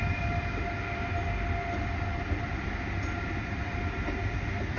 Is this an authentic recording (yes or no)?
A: yes